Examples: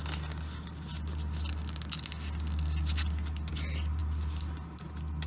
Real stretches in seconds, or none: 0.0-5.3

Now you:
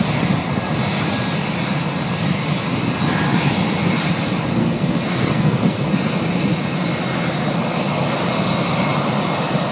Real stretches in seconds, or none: 0.0-4.6; 5.9-9.7

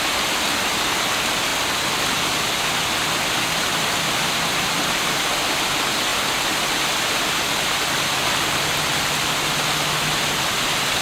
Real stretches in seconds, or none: 0.0-11.0

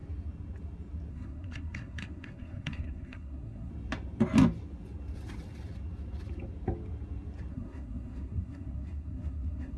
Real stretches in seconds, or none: 0.0-1.1; 3.7-7.5

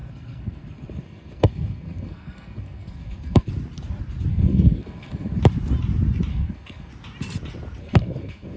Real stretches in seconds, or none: 3.5-4.3; 5.4-6.3; 6.9-7.8

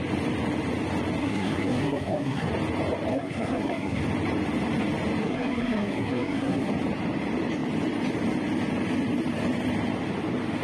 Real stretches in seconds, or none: 0.0-1.2; 2.5-3.1; 4.0-5.2; 6.7-10.6

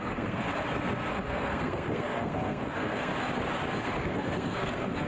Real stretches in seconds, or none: 0.5-1.1; 3.1-3.8